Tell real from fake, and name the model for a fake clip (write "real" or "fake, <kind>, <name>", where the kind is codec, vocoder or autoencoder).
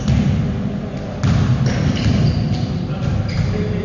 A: real